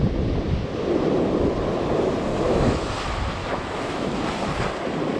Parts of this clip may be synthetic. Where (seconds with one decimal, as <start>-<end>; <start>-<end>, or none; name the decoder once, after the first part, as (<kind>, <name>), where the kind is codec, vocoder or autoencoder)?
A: 2.3-2.9 (autoencoder, DAC-VAE); 3.4-4.1